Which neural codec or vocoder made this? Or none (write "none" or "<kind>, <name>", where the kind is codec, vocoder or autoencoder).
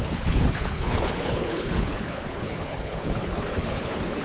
codec, HILCodec